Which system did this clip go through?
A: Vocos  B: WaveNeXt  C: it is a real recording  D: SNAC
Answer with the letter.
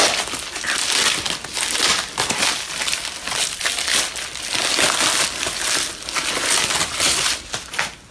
C